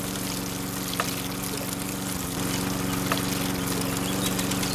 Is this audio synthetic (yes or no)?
no